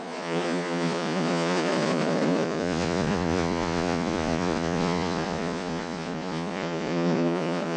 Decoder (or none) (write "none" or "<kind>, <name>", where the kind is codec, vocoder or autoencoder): vocoder, Vocos